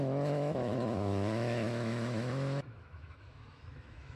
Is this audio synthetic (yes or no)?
yes